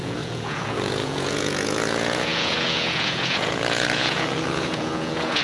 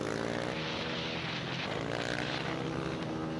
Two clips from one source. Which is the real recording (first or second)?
second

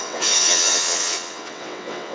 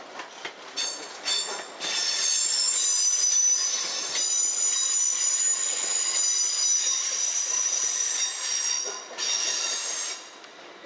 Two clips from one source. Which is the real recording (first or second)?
second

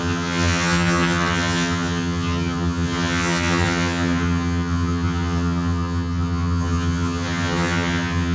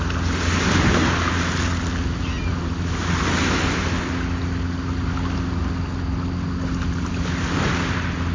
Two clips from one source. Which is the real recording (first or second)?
second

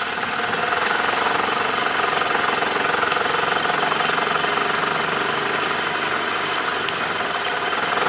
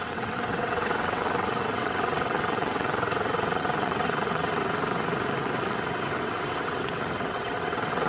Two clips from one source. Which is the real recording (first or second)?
first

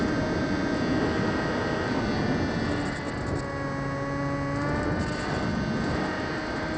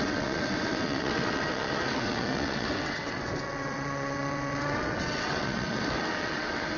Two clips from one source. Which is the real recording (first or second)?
first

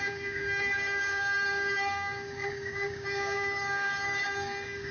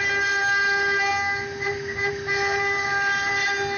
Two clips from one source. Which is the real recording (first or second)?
second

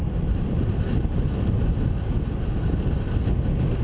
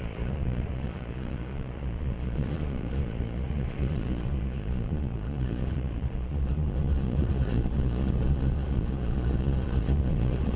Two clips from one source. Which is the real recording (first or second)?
first